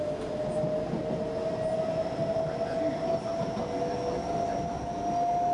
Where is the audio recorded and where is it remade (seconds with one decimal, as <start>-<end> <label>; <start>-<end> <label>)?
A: 0.0-5.5 recorded